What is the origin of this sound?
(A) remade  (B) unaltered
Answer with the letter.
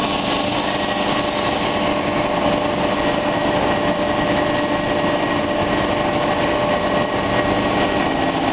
B